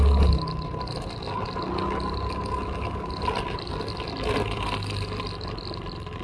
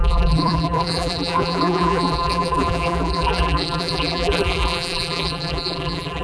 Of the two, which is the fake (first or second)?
second